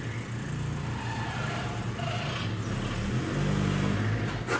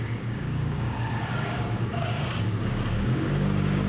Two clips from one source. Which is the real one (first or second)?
first